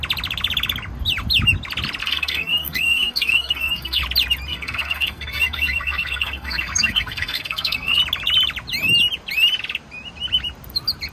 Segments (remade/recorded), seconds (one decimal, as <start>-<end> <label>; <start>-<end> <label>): 0.0-2.0 recorded; 2.0-4.0 remade; 4.0-4.5 recorded; 4.5-8.0 remade; 8.0-11.1 recorded